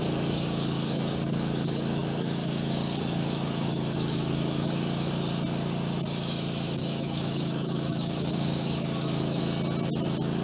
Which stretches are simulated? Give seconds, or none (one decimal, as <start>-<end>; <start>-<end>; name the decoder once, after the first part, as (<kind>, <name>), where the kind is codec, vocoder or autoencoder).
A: 0.0-5.1 (codec, DAC); 6.8-9.4